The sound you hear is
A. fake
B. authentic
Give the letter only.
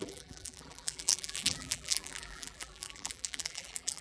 A